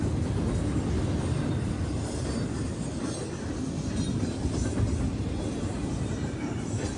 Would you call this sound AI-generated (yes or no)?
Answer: no